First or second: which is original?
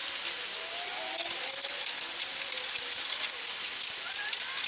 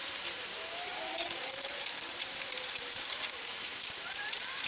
first